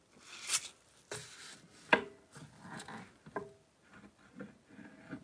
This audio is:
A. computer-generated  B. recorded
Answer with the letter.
B